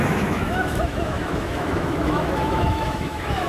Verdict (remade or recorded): remade